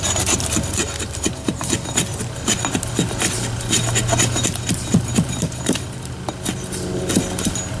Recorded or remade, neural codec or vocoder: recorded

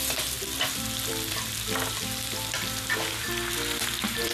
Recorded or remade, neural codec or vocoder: remade, vocoder, BigVGAN v2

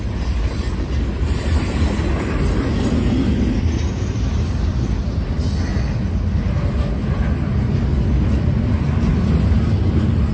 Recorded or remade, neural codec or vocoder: recorded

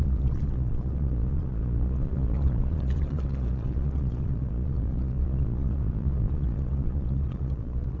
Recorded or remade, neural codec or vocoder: remade, vocoder, Vocos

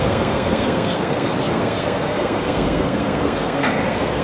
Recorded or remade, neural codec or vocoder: remade, codec, SNAC